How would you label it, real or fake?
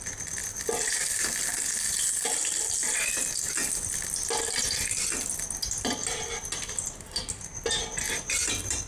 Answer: real